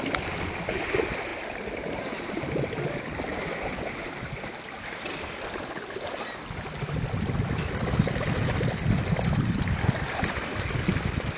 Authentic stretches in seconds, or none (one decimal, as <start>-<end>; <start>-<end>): 0.0-3.3; 5.5-11.4